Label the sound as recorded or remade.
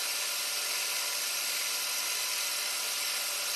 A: recorded